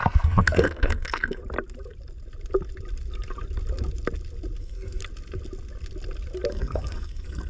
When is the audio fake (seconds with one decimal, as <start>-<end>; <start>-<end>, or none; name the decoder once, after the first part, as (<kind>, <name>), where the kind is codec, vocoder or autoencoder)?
0.0-1.4 (codec, SNAC); 4.6-5.0; 6.5-7.5